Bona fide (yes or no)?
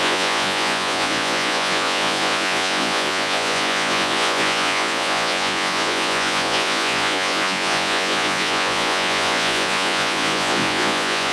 no